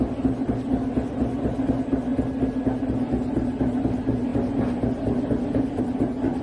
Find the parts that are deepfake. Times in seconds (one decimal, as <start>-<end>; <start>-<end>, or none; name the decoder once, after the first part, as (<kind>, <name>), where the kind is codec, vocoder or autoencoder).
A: none